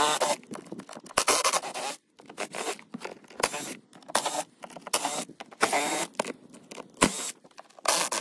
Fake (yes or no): no